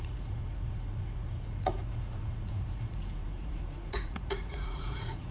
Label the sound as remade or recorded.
remade